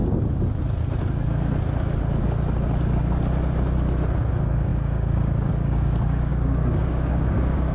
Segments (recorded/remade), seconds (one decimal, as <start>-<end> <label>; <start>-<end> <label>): 0.0-4.3 recorded; 4.3-7.7 remade